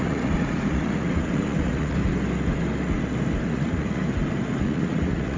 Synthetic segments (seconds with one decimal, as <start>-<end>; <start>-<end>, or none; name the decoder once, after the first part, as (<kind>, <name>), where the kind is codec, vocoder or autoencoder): 0.0-2.0 (vocoder, Vocos); 3.5-4.0; 4.6-5.4